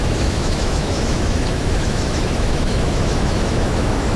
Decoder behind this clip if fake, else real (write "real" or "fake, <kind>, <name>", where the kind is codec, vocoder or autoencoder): fake, autoencoder, DAC-VAE